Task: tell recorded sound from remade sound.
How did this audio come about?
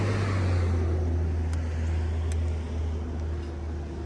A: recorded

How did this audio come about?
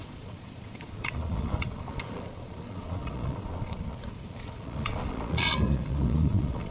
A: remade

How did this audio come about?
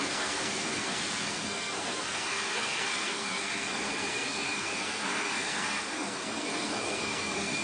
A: remade